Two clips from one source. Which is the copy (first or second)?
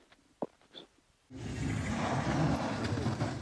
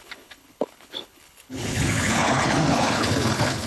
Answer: second